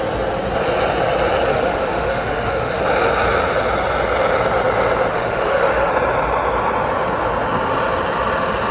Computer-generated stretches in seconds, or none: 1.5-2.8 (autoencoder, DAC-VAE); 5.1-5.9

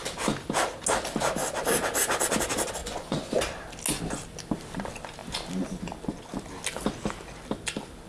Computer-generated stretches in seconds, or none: 2.8-3.4 (vocoder, Vocos)

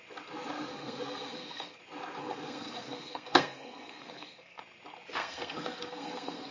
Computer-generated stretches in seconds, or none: 0.7-1.8 (codec, SNAC); 2.2-4.6; 5.2-6.5

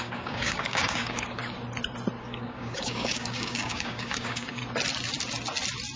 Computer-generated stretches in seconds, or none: 0.0-1.4 (codec, DAC); 2.2-4.6